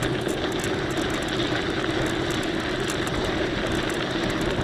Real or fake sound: real